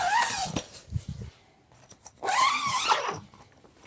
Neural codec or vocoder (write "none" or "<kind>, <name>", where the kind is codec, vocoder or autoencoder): none